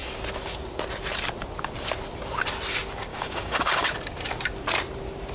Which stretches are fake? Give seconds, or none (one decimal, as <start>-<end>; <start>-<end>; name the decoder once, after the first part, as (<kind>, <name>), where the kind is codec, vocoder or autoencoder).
3.1-3.9 (codec, DAC)